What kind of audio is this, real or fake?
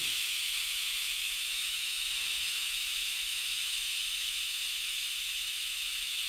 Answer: fake